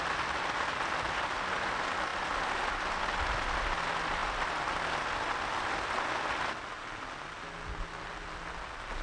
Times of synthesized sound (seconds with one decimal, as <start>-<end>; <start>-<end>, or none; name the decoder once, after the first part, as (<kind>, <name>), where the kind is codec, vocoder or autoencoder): none